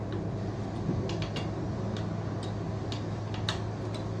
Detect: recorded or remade recorded